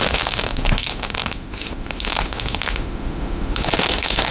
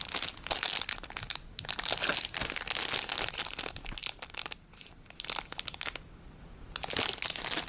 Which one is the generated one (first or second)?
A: first